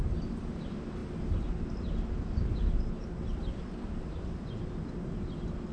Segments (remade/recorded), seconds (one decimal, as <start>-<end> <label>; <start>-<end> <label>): 0.0-1.0 remade; 1.0-3.2 recorded; 3.2-5.7 remade